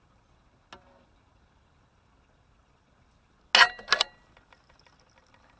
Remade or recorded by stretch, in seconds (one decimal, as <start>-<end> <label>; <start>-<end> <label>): 0.0-5.6 recorded